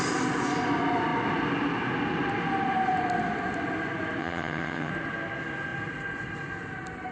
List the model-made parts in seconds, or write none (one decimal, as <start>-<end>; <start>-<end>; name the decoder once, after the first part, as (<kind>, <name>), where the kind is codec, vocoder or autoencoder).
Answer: 4.2-4.9 (vocoder, HiFi-GAN)